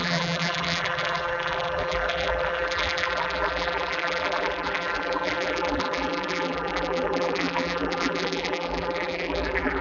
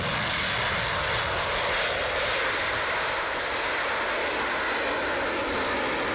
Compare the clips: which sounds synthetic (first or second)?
first